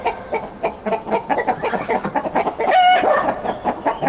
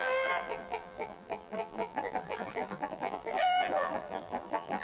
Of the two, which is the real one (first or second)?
first